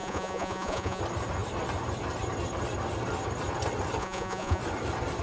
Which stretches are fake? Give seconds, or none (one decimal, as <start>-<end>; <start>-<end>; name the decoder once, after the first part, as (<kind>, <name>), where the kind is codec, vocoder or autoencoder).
0.0-1.0 (vocoder, Vocos); 4.0-4.6